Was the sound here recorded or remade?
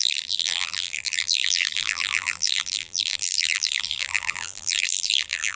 remade